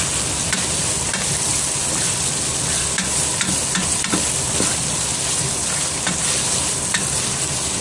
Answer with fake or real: real